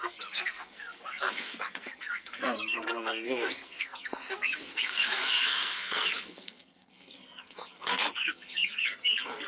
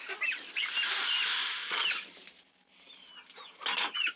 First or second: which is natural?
second